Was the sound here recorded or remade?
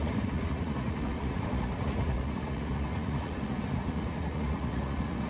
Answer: remade